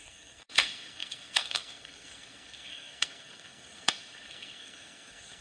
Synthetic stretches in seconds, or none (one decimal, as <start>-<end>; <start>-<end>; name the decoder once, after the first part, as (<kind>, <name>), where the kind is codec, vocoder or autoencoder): 0.0-5.4 (codec, SNAC)